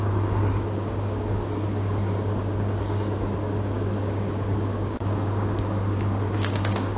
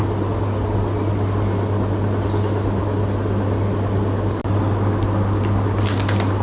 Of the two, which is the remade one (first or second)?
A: first